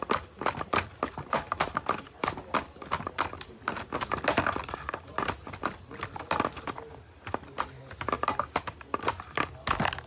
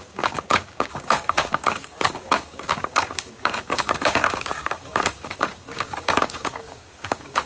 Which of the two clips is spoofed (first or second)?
second